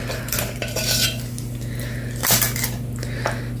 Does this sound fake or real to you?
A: real